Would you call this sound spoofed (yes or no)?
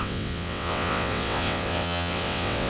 yes